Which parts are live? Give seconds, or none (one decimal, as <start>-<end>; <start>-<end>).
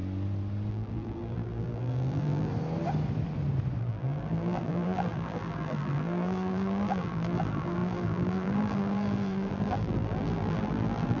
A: 0.0-0.7; 2.5-3.8